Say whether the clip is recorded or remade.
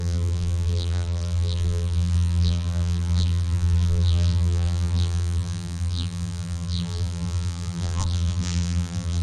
remade